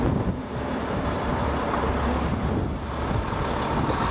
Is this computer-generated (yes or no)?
no